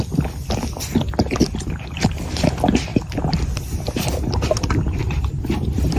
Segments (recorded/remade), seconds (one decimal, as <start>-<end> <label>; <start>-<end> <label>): 0.0-6.0 recorded